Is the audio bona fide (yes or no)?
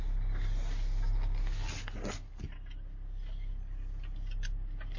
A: yes